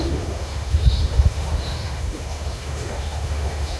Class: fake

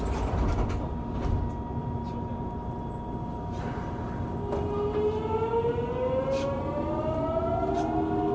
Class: real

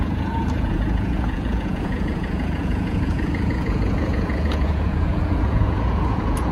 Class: fake